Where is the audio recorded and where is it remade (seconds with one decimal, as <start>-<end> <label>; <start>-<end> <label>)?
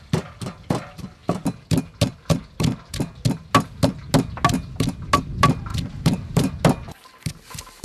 0.0-5.7 recorded; 5.7-6.5 remade; 6.5-7.8 recorded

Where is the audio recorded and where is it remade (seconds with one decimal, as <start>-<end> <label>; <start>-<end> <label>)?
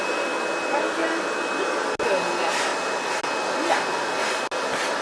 0.0-2.7 recorded; 2.7-3.2 remade; 3.2-5.0 recorded